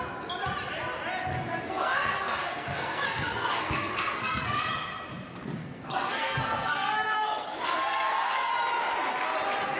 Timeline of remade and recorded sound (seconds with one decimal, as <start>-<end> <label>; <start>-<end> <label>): 0.0-1.3 recorded; 1.3-4.6 remade; 4.6-5.6 recorded; 5.6-8.5 remade; 8.5-9.8 recorded